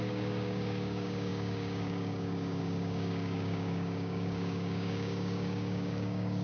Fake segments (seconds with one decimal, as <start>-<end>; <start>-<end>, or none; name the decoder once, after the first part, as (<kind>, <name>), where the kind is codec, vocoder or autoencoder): 0.0-6.4 (codec, DAC)